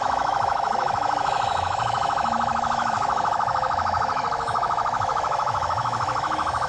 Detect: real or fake fake